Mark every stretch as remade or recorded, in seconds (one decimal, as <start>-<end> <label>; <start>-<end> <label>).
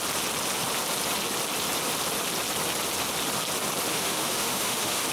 0.0-3.9 recorded; 3.9-5.1 remade